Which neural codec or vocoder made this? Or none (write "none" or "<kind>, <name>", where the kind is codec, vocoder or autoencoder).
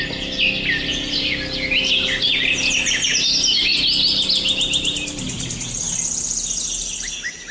none